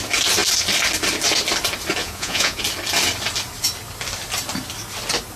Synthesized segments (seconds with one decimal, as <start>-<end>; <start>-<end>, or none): 2.0-2.6